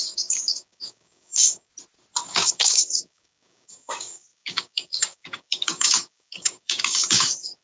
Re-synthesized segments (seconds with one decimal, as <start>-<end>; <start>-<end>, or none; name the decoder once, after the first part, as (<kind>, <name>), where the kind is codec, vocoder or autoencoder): 0.0-1.7 (codec, DAC); 2.3-7.6